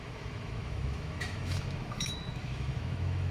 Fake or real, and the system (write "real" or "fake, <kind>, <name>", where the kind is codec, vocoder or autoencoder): fake, autoencoder, DAC-VAE